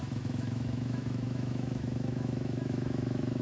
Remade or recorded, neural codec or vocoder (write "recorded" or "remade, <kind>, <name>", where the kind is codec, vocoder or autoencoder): remade, autoencoder, DAC-VAE